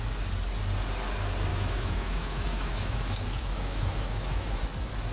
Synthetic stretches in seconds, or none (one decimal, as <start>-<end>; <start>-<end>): 1.5-4.6